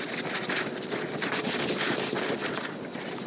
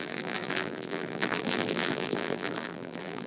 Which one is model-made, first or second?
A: second